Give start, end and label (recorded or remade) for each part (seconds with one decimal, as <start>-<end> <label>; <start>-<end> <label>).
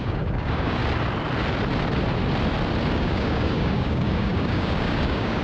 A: 0.0-0.8 remade; 0.8-2.9 recorded; 2.9-5.4 remade